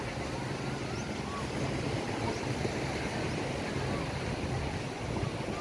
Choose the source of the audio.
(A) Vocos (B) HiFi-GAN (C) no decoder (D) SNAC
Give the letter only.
C